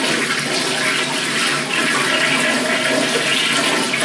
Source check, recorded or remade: recorded